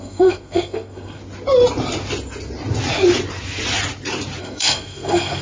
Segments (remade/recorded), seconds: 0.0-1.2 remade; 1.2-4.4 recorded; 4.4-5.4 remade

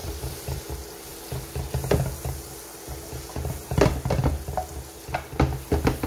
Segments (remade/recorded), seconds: 0.0-0.6 remade; 0.6-6.1 recorded

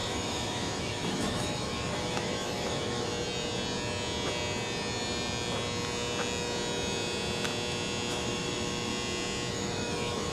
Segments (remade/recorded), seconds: 0.0-3.1 remade; 3.1-8.1 recorded; 8.1-8.9 remade; 8.9-9.5 recorded; 9.5-10.3 remade

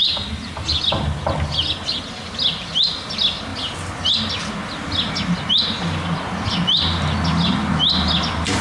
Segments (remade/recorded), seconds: 0.0-8.6 recorded

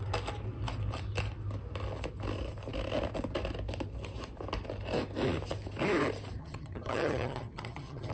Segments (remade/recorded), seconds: 0.0-6.4 recorded; 6.4-8.1 remade